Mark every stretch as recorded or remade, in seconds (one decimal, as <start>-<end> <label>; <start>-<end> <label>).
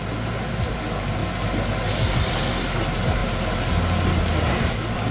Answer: 0.0-5.1 recorded